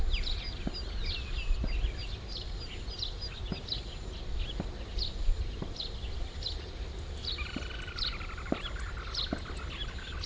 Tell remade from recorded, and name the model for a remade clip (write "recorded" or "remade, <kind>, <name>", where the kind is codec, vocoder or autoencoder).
recorded